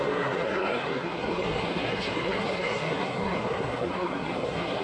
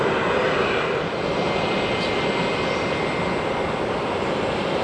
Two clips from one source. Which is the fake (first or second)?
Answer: first